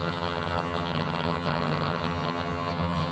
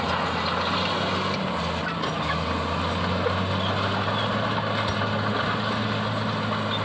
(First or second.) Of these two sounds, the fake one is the first